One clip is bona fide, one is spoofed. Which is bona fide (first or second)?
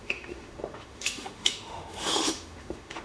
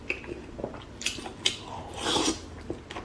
second